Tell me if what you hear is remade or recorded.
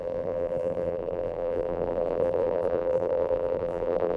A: remade